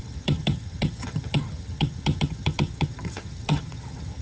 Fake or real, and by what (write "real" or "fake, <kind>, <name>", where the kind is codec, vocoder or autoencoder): fake, vocoder, HiFi-GAN